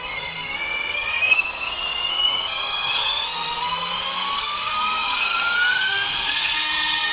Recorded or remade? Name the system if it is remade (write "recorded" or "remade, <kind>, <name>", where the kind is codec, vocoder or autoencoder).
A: remade, codec, SNAC